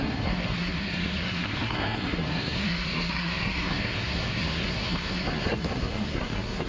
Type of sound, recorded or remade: remade